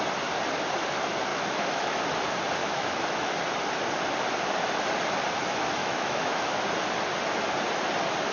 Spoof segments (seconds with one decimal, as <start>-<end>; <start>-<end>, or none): 1.3-2.0; 2.6-3.3; 5.8-6.6